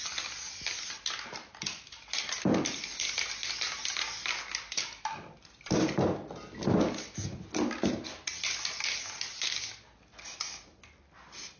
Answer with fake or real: real